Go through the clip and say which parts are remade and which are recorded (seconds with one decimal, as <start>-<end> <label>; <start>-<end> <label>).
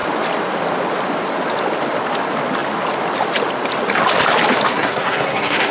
0.0-4.7 recorded; 4.7-5.7 remade